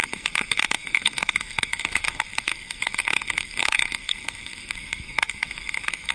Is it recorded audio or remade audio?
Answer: remade